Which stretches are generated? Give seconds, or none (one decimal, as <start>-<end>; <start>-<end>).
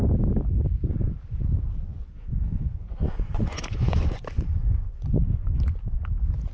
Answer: 1.9-5.6